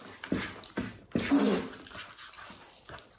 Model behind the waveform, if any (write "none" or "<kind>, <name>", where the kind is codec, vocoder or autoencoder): none